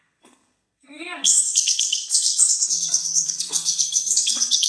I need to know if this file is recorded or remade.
remade